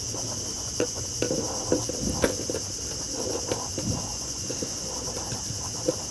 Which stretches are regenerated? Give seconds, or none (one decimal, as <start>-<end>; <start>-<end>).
0.5-1.2; 4.1-4.9